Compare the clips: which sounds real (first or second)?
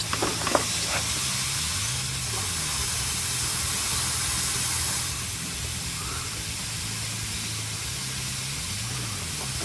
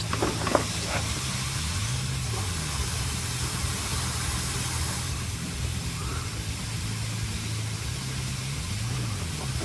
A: first